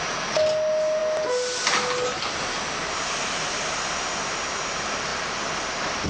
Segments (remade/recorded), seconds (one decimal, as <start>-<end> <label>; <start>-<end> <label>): 0.0-6.1 recorded